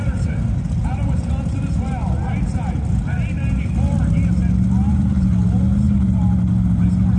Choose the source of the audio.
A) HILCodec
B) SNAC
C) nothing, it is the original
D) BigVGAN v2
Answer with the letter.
C